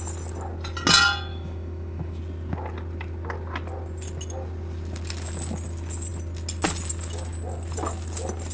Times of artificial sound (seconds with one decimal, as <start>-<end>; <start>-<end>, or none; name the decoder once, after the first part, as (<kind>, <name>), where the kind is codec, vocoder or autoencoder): 1.3-2.2 (autoencoder, DAC-VAE)